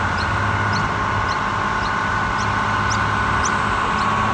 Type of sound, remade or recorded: recorded